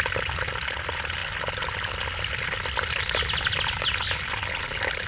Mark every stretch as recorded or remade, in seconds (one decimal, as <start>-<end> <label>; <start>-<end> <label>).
0.0-5.1 recorded